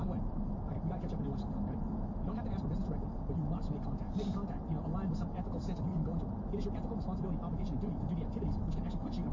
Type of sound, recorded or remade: recorded